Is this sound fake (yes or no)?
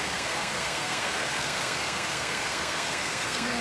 yes